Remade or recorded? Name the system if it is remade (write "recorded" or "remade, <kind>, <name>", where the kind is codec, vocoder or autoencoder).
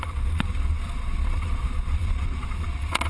remade, vocoder, Vocos